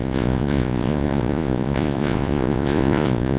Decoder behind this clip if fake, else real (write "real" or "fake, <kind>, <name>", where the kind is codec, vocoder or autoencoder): fake, vocoder, Vocos